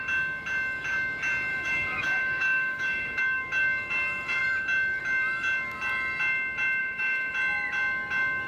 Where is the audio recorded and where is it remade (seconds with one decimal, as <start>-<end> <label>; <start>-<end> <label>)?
0.0-1.5 recorded; 1.5-3.2 remade; 3.2-6.8 recorded; 6.8-7.3 remade; 7.3-8.5 recorded